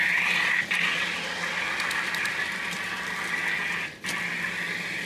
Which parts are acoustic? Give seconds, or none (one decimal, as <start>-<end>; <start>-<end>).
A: 0.0-5.1